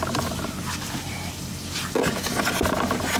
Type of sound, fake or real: real